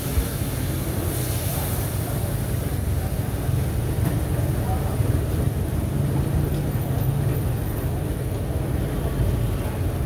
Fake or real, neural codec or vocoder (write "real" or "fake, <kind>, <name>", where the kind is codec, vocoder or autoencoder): real